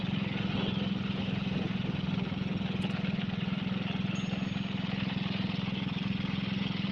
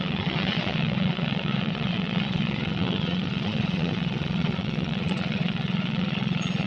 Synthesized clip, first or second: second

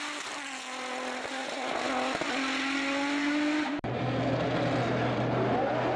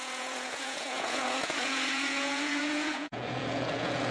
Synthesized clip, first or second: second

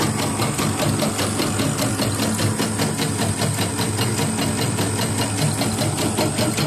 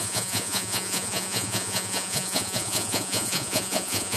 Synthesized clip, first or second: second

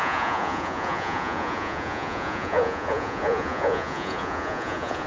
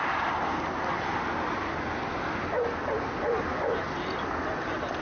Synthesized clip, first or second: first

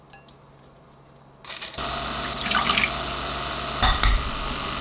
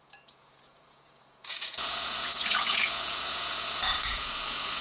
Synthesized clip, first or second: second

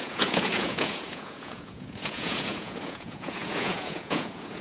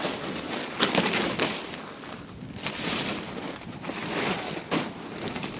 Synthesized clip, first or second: first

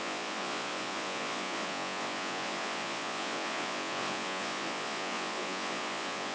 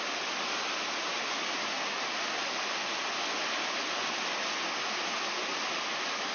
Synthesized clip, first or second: first